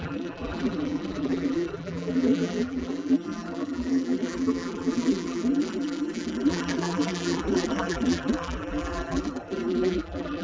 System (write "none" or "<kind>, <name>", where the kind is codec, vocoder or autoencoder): vocoder, BigVGAN v2